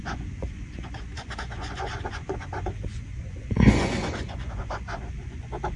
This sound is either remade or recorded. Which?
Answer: remade